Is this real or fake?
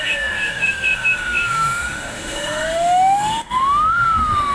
fake